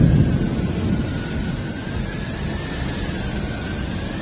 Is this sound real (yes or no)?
yes